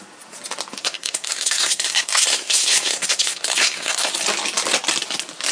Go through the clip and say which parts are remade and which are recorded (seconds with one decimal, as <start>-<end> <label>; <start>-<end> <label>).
0.0-0.8 recorded; 0.8-4.1 remade; 4.1-5.5 recorded